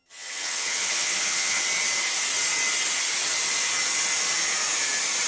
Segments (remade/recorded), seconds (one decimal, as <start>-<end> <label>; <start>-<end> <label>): 0.0-1.6 remade; 1.6-5.3 recorded